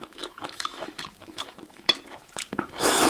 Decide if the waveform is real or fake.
fake